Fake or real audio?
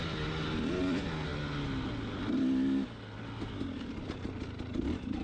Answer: real